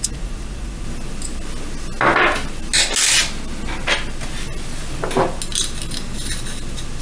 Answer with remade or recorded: recorded